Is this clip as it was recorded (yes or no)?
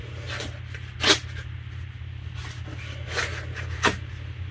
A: yes